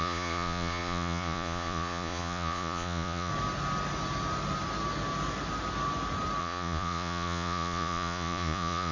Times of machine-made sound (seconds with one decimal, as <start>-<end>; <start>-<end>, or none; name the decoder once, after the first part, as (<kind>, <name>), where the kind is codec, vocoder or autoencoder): 0.0-3.3 (vocoder, Vocos); 6.4-8.9